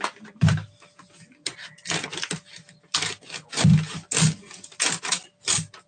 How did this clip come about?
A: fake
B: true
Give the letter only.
B